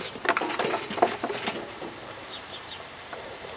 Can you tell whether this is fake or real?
real